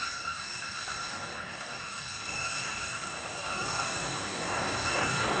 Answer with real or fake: fake